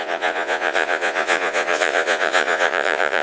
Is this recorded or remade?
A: remade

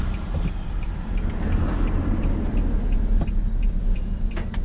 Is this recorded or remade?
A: recorded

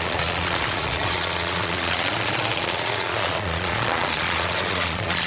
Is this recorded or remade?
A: remade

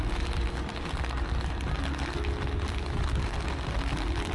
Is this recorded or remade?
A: recorded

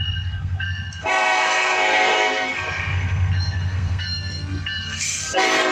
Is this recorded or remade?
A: remade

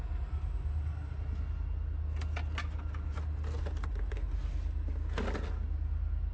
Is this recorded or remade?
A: recorded